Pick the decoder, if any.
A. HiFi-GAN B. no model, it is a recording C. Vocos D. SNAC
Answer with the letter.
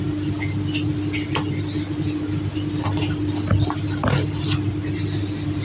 B